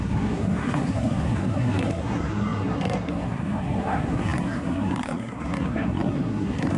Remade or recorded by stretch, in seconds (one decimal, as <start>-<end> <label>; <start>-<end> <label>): 0.0-6.8 remade

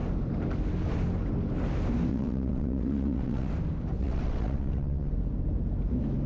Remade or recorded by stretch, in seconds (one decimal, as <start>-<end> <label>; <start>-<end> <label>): 0.0-2.1 recorded; 2.1-3.5 remade; 3.5-4.0 recorded; 4.0-5.1 remade; 5.1-6.3 recorded

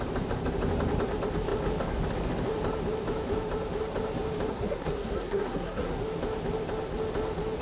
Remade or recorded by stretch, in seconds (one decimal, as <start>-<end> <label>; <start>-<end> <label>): 0.0-4.5 recorded; 4.5-6.0 remade; 6.0-7.6 recorded

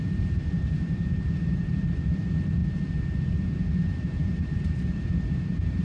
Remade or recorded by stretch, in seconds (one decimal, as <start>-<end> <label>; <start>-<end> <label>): 0.0-2.6 remade; 2.6-3.7 recorded; 3.7-5.8 remade